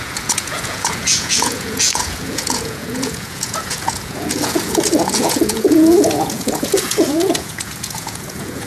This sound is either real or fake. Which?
fake